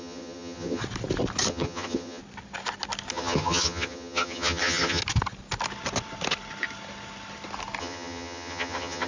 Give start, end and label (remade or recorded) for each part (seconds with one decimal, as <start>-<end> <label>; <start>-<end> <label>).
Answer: 0.0-0.8 remade; 0.8-1.5 recorded; 1.5-2.2 remade; 2.2-3.1 recorded; 3.1-5.0 remade; 5.0-7.8 recorded; 7.8-9.1 remade

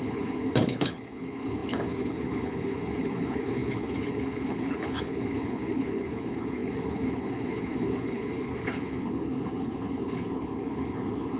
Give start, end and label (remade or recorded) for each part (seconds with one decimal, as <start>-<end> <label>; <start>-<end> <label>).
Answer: 0.0-11.4 remade

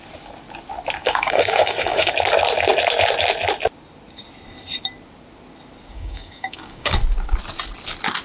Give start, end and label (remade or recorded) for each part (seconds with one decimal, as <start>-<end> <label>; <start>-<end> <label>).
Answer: 0.0-1.0 recorded; 1.0-2.1 remade; 2.1-5.9 recorded; 5.9-7.0 remade; 7.0-8.2 recorded